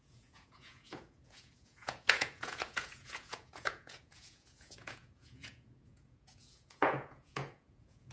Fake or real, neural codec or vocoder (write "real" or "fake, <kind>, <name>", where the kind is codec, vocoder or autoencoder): fake, vocoder, Vocos